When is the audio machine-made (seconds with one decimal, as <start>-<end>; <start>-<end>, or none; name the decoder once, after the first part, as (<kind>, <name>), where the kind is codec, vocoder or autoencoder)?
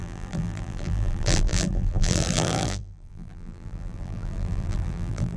0.0-5.4 (vocoder, BigVGAN v2)